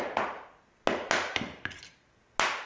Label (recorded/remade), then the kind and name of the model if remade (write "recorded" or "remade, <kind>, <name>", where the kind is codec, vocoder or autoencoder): recorded